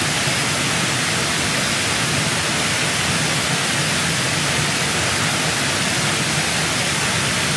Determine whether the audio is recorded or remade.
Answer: recorded